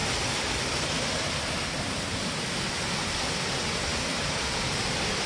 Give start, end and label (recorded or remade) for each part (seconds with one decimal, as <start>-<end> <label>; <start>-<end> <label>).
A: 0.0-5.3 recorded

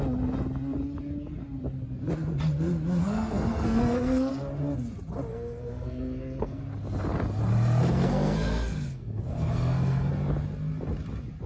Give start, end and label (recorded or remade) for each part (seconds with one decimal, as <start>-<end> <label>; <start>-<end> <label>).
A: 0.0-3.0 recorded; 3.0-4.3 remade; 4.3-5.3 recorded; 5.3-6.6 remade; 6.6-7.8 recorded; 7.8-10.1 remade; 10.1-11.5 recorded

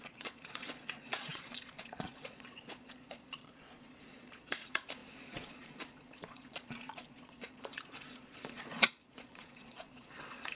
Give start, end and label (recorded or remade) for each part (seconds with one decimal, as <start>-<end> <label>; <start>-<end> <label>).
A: 0.0-10.6 remade